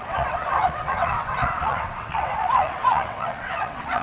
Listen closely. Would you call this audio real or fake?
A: fake